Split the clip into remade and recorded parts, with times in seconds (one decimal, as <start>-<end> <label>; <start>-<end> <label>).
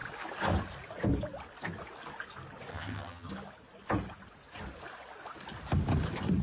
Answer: 0.0-2.7 recorded; 2.7-3.3 remade; 3.3-6.4 recorded